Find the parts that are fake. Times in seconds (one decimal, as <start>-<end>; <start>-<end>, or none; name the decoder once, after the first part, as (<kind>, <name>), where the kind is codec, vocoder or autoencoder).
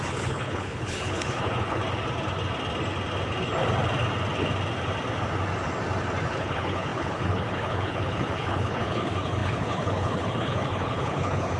0.0-1.8 (codec, HILCodec); 6.3-11.6